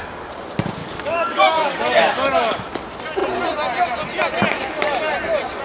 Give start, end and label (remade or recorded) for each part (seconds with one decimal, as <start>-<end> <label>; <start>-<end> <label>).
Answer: 0.0-0.8 recorded; 0.8-2.6 remade; 2.6-5.6 recorded